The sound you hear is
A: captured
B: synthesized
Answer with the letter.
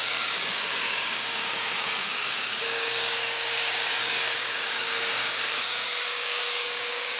B